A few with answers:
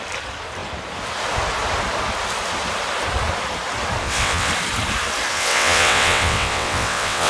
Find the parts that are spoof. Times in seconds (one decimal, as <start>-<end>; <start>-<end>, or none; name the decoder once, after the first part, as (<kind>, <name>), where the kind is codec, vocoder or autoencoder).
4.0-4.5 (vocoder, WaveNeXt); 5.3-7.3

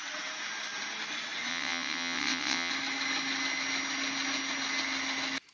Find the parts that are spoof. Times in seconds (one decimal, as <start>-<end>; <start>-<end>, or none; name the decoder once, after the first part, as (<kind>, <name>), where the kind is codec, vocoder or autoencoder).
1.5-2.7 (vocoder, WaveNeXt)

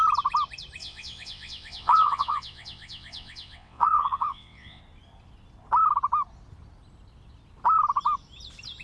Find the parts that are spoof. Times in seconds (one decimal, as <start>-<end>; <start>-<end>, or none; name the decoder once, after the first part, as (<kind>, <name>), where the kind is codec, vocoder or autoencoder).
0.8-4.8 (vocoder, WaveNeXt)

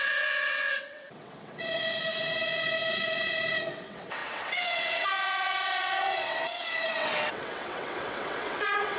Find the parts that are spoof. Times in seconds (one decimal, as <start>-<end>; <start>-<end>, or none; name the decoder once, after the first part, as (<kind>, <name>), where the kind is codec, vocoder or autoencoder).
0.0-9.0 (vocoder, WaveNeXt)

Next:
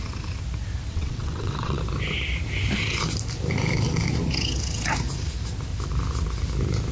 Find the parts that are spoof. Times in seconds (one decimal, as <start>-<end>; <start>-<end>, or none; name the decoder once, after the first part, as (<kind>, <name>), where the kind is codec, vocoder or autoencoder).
0.9-1.8 (vocoder, WaveNeXt)

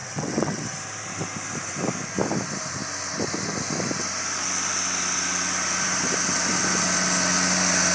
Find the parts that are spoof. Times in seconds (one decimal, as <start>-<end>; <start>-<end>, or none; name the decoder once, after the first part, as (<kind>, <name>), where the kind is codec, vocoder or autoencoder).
0.0-0.6 (vocoder, WaveNeXt)